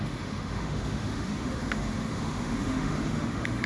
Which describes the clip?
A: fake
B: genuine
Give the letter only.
A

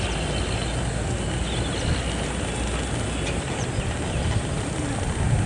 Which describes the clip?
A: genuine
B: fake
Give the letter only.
A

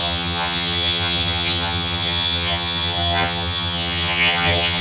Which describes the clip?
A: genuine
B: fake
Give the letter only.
B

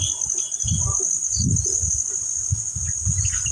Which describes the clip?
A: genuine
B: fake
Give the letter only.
A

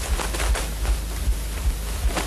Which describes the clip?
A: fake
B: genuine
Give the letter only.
B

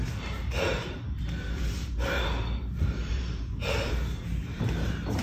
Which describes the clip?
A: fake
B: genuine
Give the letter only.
A